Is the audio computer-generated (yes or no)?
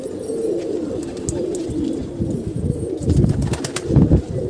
no